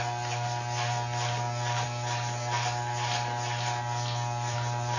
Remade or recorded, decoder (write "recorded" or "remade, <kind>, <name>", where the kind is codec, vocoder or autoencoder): recorded